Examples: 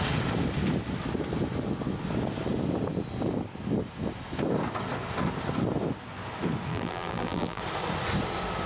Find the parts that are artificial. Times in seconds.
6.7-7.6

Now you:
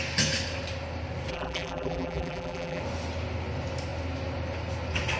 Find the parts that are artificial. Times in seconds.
1.3-2.8

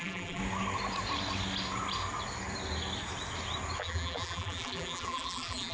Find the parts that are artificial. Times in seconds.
0.0-0.4; 3.8-5.7

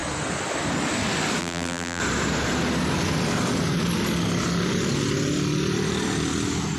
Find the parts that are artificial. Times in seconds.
1.4-2.0

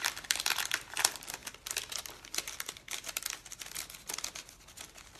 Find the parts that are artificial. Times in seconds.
none

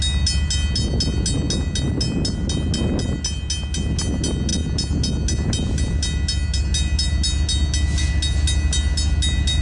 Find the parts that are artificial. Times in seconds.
none

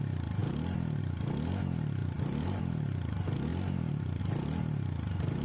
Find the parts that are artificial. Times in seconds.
2.0-2.6; 3.5-4.2